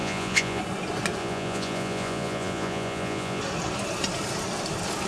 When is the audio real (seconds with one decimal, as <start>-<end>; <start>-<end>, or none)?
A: 0.6-1.2; 3.4-5.1